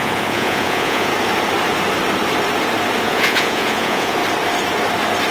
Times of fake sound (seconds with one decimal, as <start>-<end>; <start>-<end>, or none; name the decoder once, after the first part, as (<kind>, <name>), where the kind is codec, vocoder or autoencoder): 0.0-1.1 (vocoder, Vocos); 3.0-4.2